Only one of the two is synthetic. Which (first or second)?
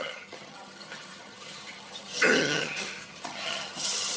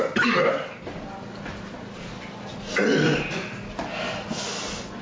first